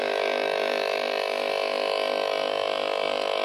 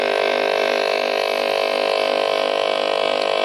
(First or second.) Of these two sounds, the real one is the second